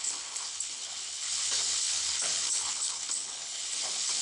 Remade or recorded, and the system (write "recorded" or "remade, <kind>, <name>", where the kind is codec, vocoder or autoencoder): remade, codec, HILCodec